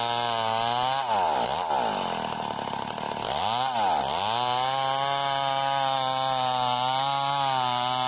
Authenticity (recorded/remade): recorded